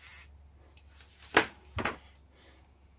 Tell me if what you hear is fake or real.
real